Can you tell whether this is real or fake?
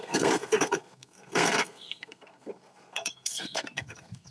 fake